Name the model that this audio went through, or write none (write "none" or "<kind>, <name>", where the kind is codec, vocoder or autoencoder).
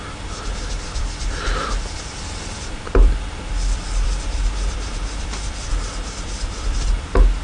vocoder, BigVGAN v2